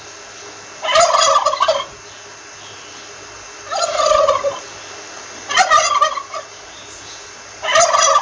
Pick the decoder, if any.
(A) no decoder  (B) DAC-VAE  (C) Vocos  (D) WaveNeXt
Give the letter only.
A